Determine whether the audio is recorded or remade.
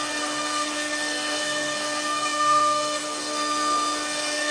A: remade